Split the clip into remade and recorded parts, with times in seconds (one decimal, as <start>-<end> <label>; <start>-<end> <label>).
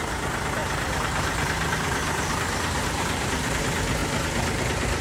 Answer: 0.0-0.6 recorded; 0.6-3.6 remade; 3.6-5.0 recorded